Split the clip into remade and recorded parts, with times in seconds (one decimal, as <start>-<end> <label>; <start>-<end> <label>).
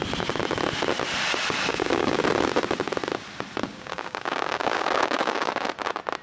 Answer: 0.0-1.7 recorded; 1.7-2.2 remade; 2.2-3.7 recorded; 3.7-5.5 remade; 5.5-6.2 recorded